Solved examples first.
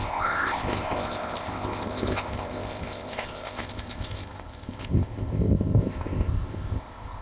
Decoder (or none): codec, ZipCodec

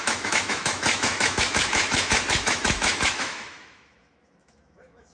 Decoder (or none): autoencoder, DAC-VAE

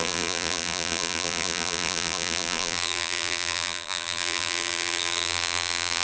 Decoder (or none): vocoder, BigVGAN v2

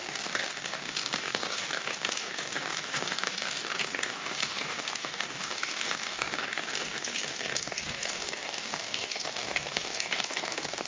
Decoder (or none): codec, DAC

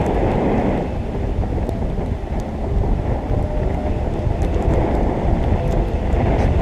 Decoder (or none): none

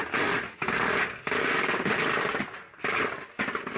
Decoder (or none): none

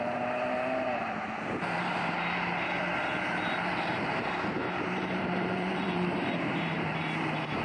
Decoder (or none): vocoder, BigVGAN v2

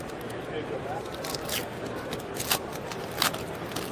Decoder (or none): none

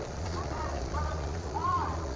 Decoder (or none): vocoder, Vocos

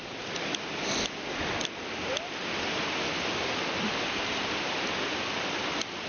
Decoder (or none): none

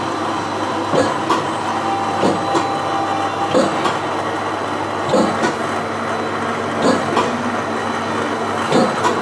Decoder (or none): none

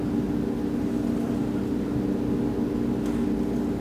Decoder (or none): none